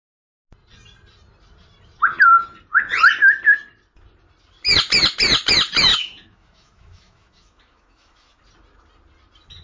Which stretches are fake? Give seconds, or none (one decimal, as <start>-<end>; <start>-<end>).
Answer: 5.9-8.4